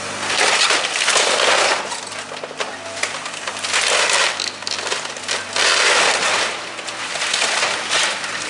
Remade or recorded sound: recorded